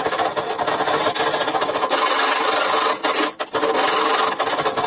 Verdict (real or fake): real